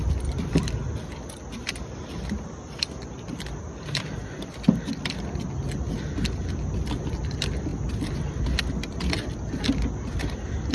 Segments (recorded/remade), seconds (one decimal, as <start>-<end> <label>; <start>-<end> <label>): 0.0-10.7 recorded